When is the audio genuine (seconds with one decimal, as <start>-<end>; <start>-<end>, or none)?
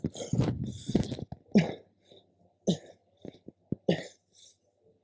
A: 0.0-5.0